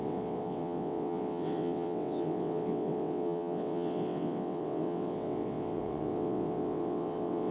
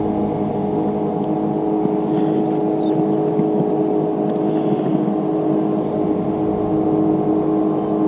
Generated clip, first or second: first